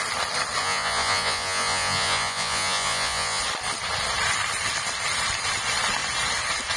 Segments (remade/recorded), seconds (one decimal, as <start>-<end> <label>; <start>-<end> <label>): 0.0-0.6 recorded; 0.6-3.4 remade; 3.4-6.8 recorded